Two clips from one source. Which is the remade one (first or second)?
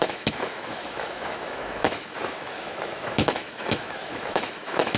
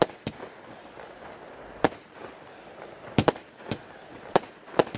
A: first